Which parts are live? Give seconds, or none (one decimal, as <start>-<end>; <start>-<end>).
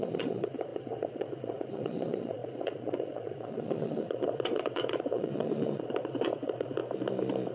6.8-7.5